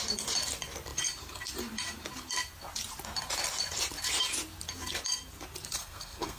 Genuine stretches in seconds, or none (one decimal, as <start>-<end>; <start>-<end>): 0.0-5.8